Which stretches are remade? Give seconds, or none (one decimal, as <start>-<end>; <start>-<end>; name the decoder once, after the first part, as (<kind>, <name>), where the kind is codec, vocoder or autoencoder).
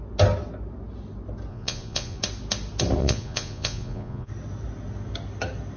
1.5-2.2 (vocoder, Vocos); 3.0-4.3